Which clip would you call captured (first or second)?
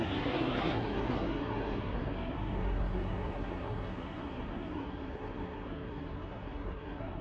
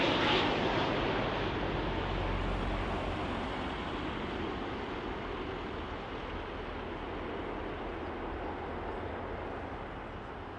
second